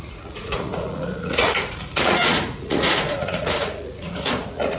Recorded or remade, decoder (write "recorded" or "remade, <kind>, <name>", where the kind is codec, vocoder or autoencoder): remade, vocoder, Vocos